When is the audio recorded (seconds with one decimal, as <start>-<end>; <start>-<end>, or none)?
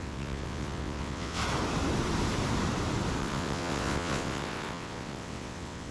1.4-3.2